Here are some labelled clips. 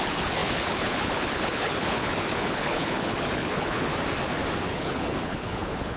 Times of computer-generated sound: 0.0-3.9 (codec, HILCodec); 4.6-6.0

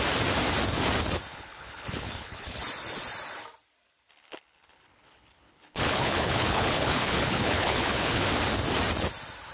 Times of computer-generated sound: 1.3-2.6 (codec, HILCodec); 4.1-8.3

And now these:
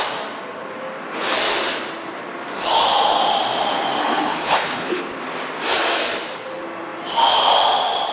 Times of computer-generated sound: 4.0-5.0 (codec, HILCodec)

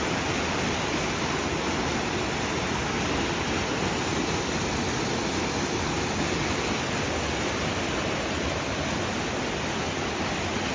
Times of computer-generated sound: none